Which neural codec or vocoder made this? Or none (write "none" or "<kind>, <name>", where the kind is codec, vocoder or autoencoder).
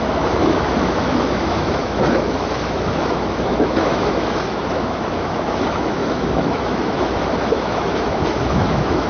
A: autoencoder, DAC-VAE